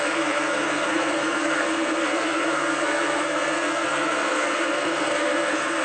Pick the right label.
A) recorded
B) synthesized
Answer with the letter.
B